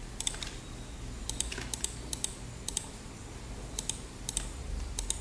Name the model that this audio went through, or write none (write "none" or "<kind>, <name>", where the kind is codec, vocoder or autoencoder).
none